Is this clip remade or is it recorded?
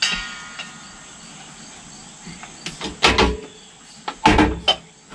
recorded